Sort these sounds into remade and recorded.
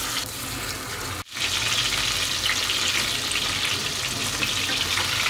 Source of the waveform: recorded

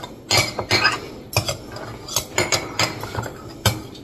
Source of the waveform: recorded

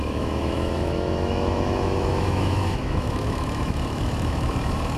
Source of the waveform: remade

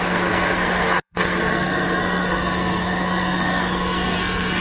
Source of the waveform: remade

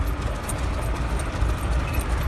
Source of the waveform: recorded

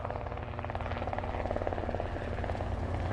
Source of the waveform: recorded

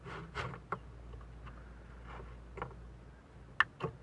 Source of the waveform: recorded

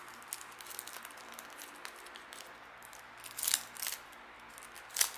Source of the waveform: recorded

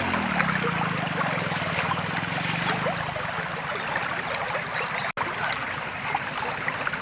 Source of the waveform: recorded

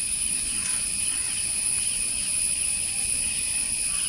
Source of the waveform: remade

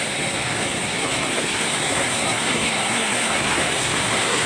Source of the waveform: remade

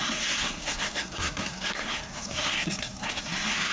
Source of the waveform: remade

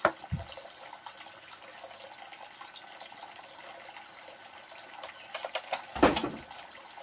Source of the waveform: recorded